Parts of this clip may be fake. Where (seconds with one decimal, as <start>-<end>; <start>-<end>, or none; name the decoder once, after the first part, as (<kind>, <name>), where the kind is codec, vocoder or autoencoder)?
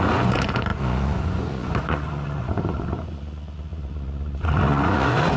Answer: 0.0-5.4 (vocoder, Vocos)